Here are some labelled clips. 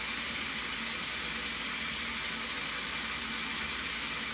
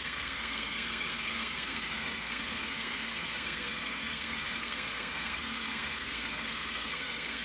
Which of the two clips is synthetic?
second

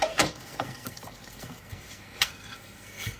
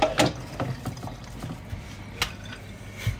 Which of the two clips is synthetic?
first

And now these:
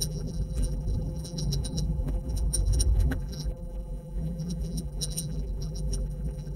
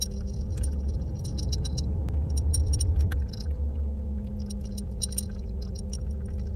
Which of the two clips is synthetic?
first